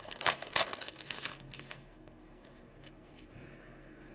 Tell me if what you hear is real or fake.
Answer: fake